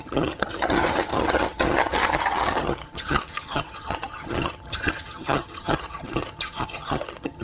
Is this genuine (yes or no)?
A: no